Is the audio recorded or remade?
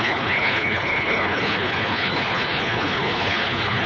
remade